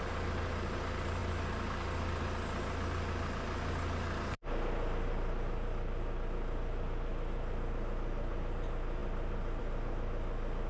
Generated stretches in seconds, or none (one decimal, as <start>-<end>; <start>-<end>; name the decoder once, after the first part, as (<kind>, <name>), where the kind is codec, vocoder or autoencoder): none